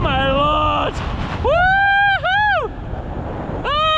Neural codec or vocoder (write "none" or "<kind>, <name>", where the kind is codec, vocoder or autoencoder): none